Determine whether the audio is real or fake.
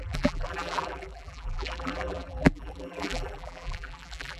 fake